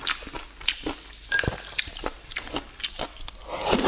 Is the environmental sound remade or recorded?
recorded